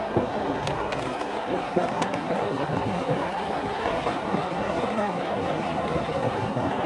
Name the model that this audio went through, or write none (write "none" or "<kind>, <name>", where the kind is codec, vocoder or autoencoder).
codec, SNAC